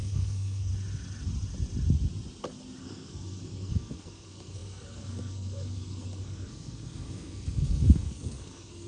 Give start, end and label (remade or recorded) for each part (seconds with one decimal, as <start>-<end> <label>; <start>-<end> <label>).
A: 0.0-0.7 remade; 0.7-2.8 recorded; 2.8-8.9 remade